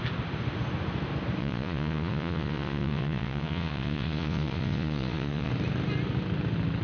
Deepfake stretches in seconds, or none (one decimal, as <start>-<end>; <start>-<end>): 1.4-5.5